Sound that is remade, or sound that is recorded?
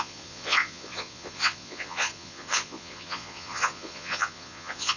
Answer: remade